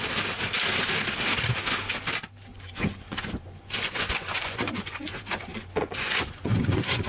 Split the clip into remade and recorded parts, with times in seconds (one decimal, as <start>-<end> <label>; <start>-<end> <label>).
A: 0.0-2.5 recorded; 2.5-5.0 remade; 5.0-5.5 recorded; 5.5-7.1 remade